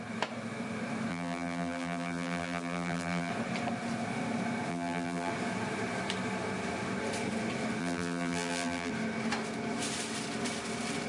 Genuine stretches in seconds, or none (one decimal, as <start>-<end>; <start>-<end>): 0.0-1.1; 3.3-4.7; 5.3-7.8; 8.9-11.1